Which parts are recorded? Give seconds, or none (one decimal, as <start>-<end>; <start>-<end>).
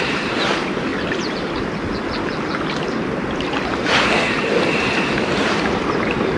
0.9-4.7